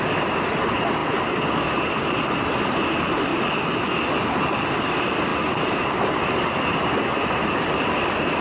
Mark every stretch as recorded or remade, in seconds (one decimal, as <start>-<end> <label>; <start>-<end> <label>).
0.0-1.0 remade; 1.0-1.7 recorded; 1.7-3.3 remade; 3.3-4.7 recorded; 4.7-5.3 remade; 5.3-7.2 recorded; 7.2-8.4 remade